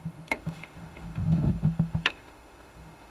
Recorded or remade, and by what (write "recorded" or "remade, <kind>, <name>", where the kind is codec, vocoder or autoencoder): remade, autoencoder, DAC-VAE